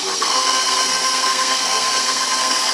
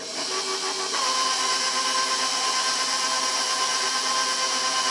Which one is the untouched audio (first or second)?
second